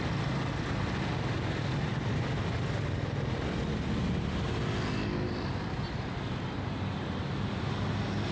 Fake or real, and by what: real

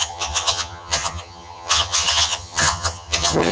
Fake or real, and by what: fake, vocoder, HiFi-GAN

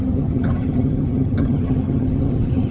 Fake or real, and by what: fake, vocoder, HiFi-GAN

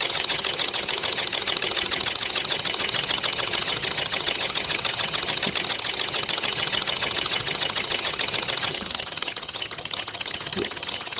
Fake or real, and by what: fake, vocoder, HiFi-GAN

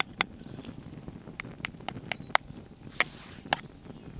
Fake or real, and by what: real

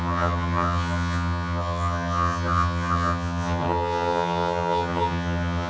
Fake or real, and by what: fake, vocoder, HiFi-GAN